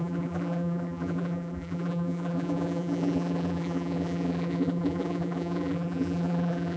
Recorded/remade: remade